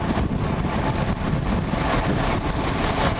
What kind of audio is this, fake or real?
real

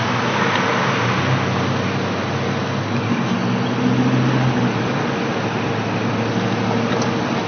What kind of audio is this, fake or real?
real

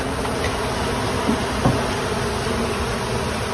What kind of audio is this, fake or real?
real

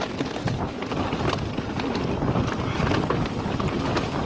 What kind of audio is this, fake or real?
real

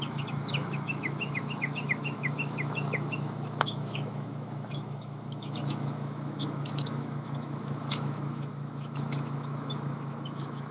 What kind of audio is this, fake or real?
fake